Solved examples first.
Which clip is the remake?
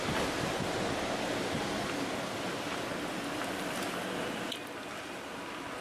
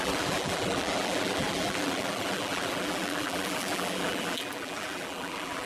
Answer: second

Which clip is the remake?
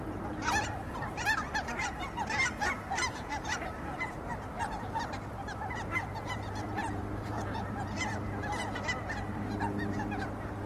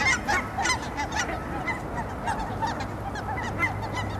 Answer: first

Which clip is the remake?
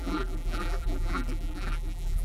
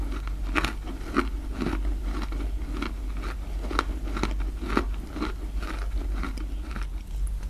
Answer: first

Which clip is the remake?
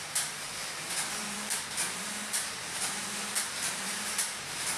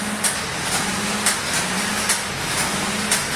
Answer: first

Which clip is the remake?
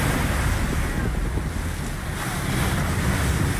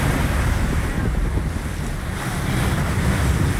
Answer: second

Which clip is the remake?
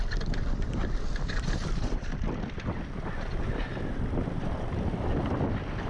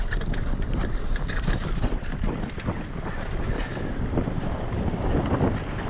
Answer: first